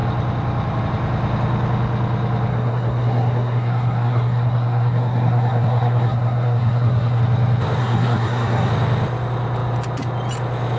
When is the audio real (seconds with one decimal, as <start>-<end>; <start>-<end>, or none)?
0.0-2.5; 7.2-7.8; 8.7-10.8